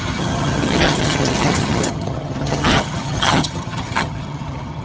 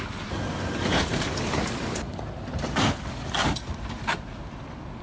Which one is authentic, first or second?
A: second